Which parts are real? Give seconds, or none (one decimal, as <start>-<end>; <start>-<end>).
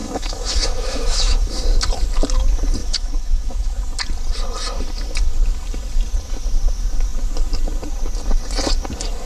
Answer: 1.6-2.8; 3.8-9.3